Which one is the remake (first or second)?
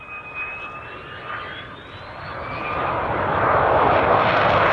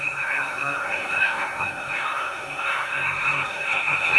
second